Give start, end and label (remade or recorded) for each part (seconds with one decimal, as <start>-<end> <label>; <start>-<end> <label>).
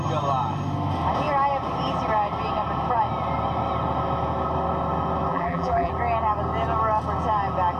0.0-5.3 recorded; 5.3-5.9 remade; 5.9-7.8 recorded